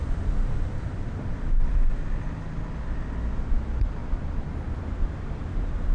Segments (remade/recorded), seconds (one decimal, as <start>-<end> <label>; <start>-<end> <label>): 0.0-5.9 recorded